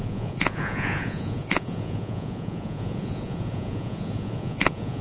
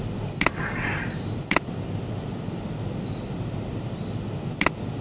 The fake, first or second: first